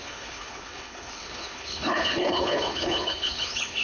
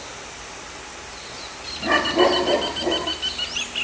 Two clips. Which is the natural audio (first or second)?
second